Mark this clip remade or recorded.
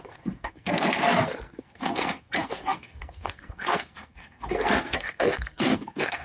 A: remade